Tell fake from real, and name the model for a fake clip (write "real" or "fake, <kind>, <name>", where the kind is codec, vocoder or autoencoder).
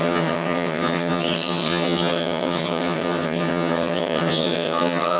fake, vocoder, HiFi-GAN